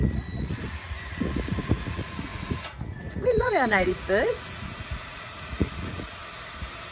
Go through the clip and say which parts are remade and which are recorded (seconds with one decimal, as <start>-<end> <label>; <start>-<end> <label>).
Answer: 0.0-6.2 remade; 6.2-6.9 recorded